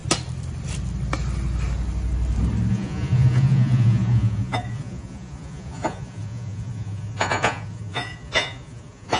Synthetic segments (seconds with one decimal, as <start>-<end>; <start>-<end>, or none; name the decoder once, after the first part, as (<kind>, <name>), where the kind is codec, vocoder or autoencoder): 2.7-9.2 (vocoder, Vocos)